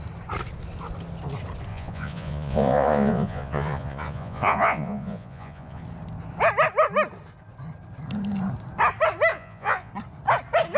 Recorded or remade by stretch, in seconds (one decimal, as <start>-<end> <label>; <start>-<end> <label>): 0.0-1.7 recorded; 1.7-5.8 remade; 5.8-9.3 recorded; 9.3-9.9 remade; 9.9-10.8 recorded